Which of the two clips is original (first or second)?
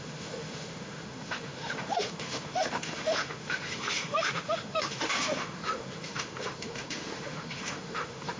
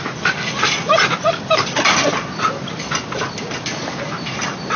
second